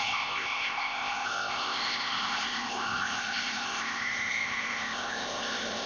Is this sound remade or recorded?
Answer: remade